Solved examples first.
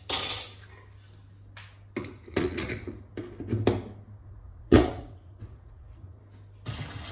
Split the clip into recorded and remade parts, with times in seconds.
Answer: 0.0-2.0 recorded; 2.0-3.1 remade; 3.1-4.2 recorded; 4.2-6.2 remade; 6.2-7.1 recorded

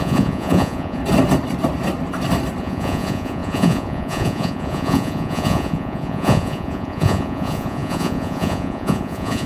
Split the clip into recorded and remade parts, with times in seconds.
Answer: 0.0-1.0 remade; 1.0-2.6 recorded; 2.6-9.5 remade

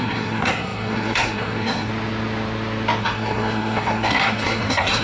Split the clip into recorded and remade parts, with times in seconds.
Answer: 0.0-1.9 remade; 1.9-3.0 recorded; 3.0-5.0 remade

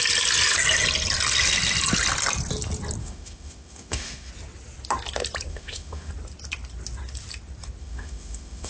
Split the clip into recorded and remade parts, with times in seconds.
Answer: 0.0-3.0 recorded; 3.0-4.3 remade; 4.3-5.5 recorded; 5.5-6.1 remade; 6.1-7.8 recorded; 7.8-8.7 remade